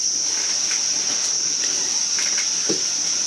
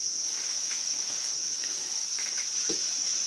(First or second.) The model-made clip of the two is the second